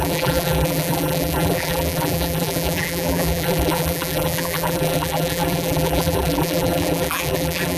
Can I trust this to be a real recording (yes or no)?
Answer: no